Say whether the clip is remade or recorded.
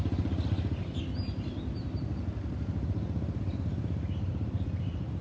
recorded